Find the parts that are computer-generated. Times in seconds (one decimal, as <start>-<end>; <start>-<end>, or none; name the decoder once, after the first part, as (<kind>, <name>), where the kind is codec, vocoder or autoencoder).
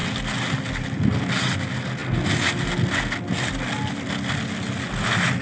none